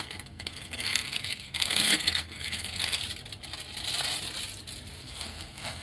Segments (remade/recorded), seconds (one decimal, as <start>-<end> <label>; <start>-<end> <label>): 0.0-3.0 remade; 3.0-5.0 recorded; 5.0-5.8 remade